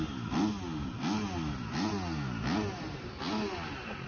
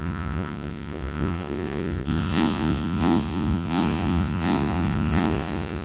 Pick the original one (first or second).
first